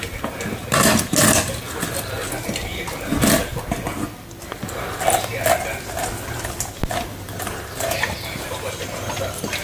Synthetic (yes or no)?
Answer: no